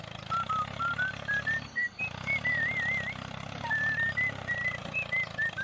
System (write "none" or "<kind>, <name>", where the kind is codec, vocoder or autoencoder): vocoder, BigVGAN v2